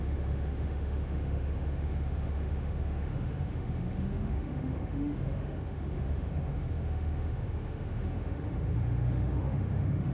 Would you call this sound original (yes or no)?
no